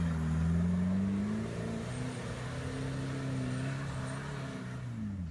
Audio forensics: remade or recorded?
recorded